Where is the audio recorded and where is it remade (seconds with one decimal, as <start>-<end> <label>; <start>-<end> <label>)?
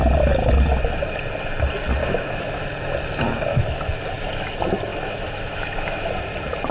0.0-2.0 recorded; 2.0-2.6 remade; 2.6-3.5 recorded; 3.5-4.1 remade; 4.1-4.9 recorded; 4.9-6.1 remade; 6.1-6.7 recorded